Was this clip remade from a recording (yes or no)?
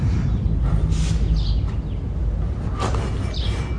no